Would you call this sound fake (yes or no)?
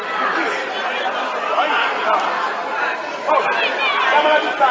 no